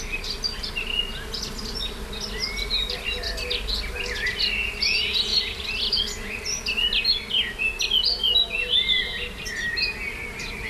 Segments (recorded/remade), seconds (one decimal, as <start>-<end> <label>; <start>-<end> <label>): 0.0-10.7 recorded

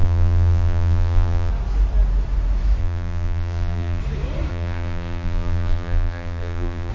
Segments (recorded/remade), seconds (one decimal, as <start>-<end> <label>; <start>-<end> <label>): 0.0-1.5 remade; 1.5-2.8 recorded; 2.8-4.0 remade; 4.0-4.5 recorded; 4.5-6.9 remade

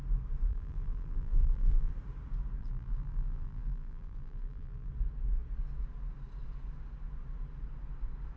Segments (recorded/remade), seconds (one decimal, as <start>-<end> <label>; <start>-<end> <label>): 0.0-0.5 recorded; 0.5-1.9 remade; 1.9-2.6 recorded; 2.6-4.9 remade; 4.9-8.4 recorded

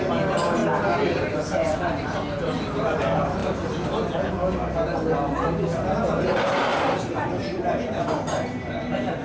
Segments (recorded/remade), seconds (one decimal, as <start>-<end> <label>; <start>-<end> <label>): 0.0-6.7 recorded; 6.7-8.0 remade; 8.0-9.2 recorded

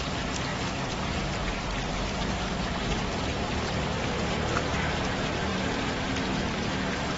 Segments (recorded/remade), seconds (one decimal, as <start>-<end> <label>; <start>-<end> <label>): 0.0-0.5 recorded; 0.5-4.5 remade; 4.5-5.5 recorded; 5.5-6.1 remade; 6.1-7.2 recorded